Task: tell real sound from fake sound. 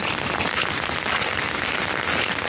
real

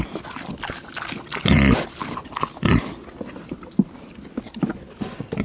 real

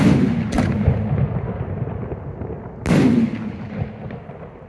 real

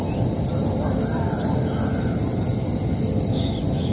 real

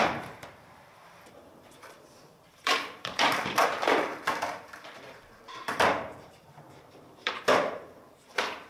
fake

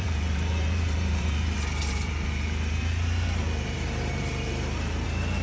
fake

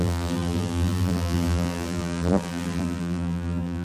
fake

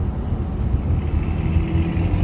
real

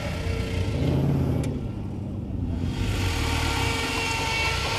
real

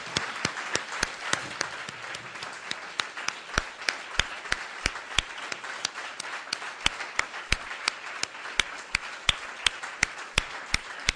fake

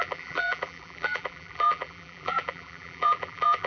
fake